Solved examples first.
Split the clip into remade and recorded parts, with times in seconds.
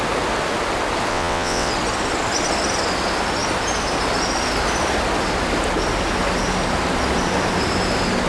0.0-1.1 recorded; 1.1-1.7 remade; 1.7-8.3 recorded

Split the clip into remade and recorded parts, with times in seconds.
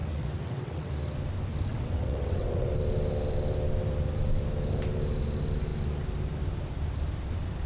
0.0-0.9 remade; 0.9-1.7 recorded; 1.7-2.7 remade; 2.7-7.7 recorded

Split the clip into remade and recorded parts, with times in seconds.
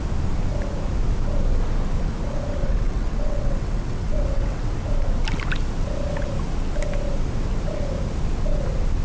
0.0-2.6 recorded; 2.6-4.7 remade; 4.7-9.0 recorded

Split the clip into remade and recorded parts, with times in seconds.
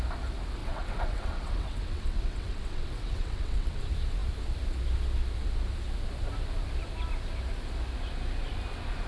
0.0-0.6 recorded; 0.6-3.8 remade; 3.8-9.1 recorded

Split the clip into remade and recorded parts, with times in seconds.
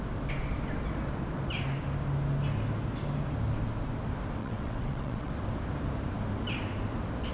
0.0-4.4 recorded; 4.4-5.3 remade; 5.3-7.3 recorded